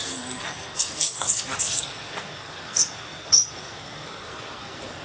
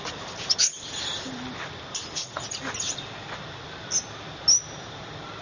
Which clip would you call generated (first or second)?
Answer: first